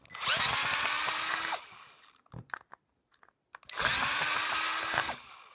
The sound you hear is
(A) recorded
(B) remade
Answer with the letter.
A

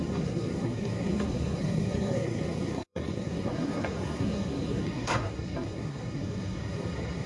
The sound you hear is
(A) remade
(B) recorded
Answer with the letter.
A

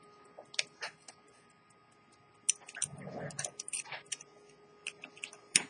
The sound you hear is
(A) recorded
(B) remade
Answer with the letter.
A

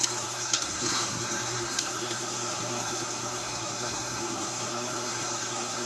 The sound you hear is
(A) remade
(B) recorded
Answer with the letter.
A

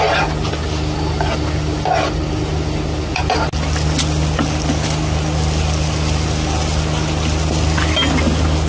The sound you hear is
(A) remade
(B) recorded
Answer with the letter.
B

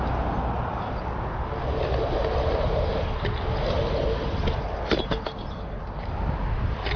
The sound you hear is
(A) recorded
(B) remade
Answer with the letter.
A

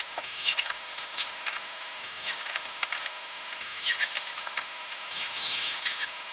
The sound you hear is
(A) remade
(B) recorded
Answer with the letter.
A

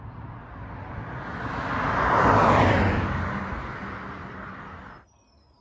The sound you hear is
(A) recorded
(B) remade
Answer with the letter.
A